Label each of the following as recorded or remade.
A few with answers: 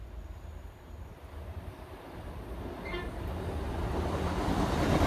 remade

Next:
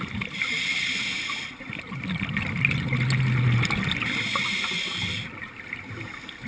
recorded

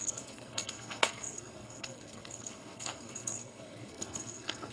remade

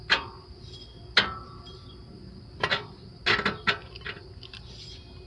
recorded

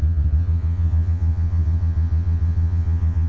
remade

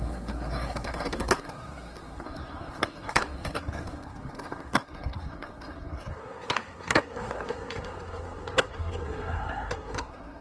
remade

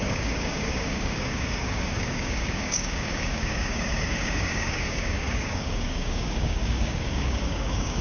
remade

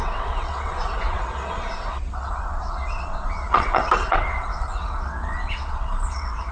remade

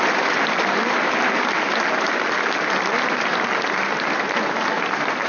recorded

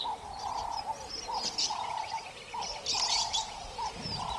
recorded